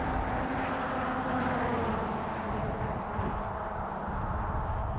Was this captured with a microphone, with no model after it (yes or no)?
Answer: yes